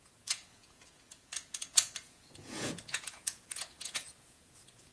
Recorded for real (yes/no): no